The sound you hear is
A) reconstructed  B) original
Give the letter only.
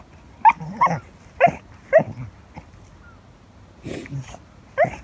B